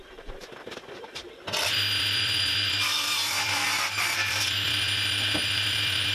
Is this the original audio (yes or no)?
no